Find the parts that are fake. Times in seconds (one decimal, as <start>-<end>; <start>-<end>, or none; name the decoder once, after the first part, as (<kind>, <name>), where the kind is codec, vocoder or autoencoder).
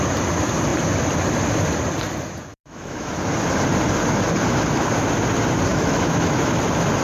2.5-3.1 (autoencoder, DAC-VAE); 5.7-6.6